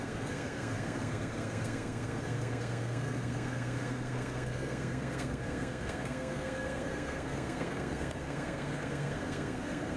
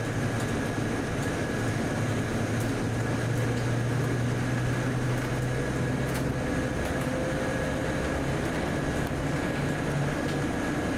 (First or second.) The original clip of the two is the second